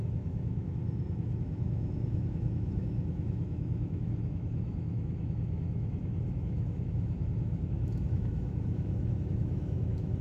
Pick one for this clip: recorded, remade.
remade